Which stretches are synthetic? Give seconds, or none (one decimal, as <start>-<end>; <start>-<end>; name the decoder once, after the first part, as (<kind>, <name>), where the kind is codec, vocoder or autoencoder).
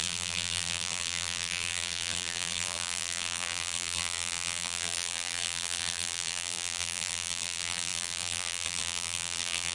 0.0-9.7 (vocoder, BigVGAN v2)